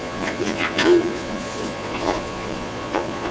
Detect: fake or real fake